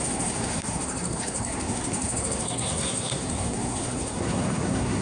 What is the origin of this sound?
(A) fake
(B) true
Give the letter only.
A